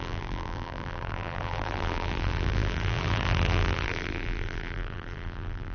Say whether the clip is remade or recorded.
remade